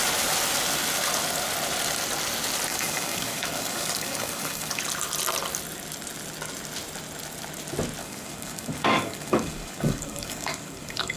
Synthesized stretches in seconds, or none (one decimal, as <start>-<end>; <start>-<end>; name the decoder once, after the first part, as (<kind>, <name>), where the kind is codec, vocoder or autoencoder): 2.7-4.8 (codec, DAC); 8.0-11.2

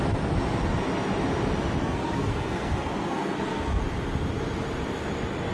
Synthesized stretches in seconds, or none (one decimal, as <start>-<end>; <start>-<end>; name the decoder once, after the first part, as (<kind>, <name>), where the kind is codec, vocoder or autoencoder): 1.8-3.8 (codec, SNAC)